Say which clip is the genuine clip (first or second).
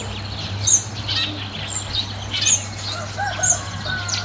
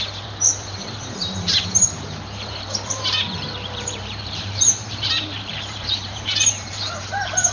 first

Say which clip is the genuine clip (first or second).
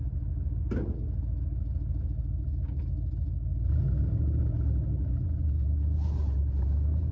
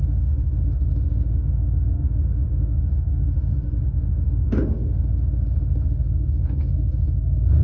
first